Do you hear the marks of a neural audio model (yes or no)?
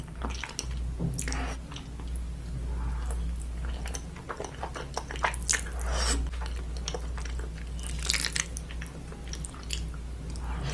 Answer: no